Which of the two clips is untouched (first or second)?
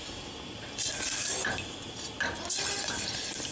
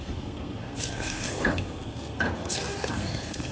first